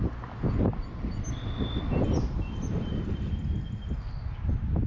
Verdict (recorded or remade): recorded